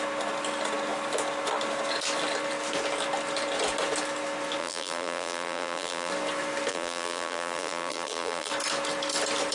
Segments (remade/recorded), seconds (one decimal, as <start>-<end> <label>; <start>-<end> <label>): 0.0-4.6 recorded; 4.6-6.1 remade; 6.1-6.7 recorded; 6.7-8.5 remade; 8.5-9.5 recorded